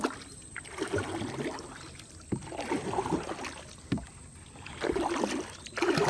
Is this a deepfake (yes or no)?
no